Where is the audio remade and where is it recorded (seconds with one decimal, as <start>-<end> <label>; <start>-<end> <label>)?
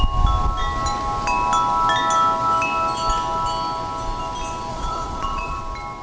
0.0-4.7 recorded; 4.7-5.6 remade; 5.6-6.0 recorded